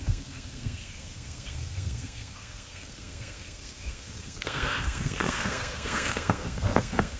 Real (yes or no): no